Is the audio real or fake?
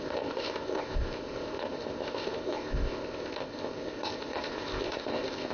fake